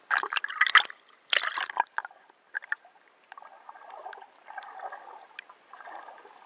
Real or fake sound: real